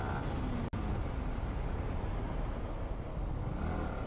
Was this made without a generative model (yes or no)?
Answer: yes